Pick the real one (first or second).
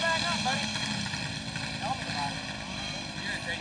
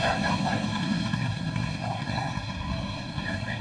first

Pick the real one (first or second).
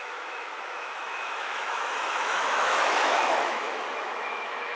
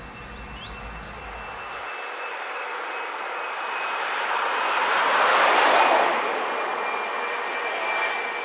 second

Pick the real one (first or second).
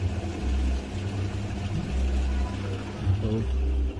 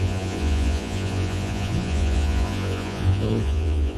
first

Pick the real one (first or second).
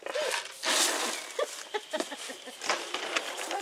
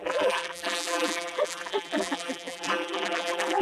first